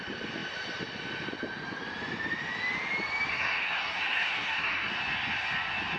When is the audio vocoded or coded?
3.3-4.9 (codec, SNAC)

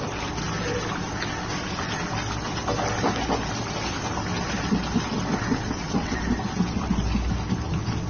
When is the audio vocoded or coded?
5.6-6.2 (vocoder, WaveNeXt)